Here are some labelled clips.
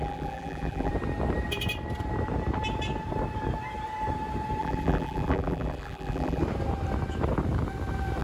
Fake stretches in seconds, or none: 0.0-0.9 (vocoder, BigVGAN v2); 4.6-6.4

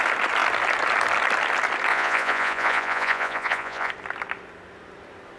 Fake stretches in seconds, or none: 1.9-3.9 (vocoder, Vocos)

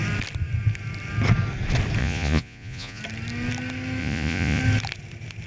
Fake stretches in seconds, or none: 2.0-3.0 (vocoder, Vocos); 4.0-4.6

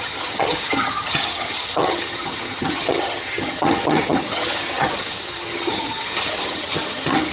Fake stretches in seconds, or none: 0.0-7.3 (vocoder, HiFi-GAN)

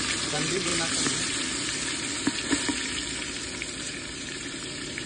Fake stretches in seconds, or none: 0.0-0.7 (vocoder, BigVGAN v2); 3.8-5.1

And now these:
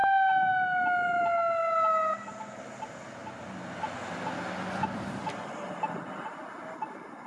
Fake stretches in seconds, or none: none